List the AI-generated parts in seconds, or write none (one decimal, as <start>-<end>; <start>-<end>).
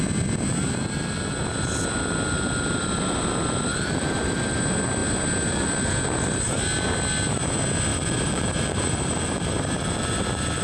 3.7-4.6; 7.9-10.6